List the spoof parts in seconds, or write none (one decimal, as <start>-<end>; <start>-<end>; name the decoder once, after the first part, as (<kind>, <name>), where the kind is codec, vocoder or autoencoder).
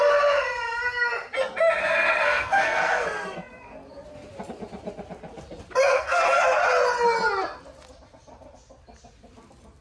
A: 1.8-3.7 (codec, SNAC); 5.9-6.4